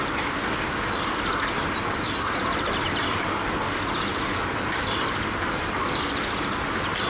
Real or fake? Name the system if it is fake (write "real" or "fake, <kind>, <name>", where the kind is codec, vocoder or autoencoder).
real